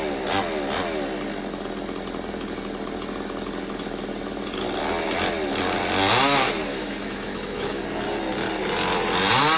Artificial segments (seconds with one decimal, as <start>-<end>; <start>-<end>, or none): 6.7-7.8